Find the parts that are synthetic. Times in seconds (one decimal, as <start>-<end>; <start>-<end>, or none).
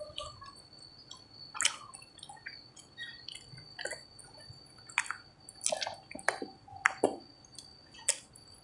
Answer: none